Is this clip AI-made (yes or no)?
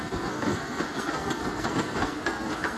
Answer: yes